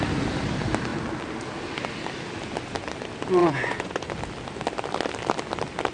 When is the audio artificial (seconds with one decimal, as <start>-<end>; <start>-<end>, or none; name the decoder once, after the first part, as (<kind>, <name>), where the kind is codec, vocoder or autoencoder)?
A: 3.4-4.1 (vocoder, Vocos)